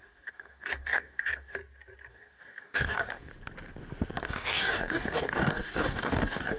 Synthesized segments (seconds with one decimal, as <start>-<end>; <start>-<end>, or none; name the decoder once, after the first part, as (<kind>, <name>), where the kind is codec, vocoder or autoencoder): 0.0-1.6 (codec, DAC); 2.1-3.3; 4.2-6.6